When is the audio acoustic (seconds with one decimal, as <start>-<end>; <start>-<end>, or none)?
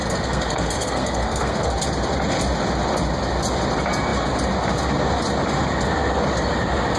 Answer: 1.7-7.0